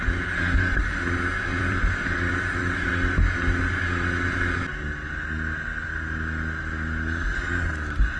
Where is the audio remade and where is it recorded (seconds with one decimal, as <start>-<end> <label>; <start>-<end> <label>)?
0.0-1.5 recorded; 1.5-2.9 remade; 2.9-8.2 recorded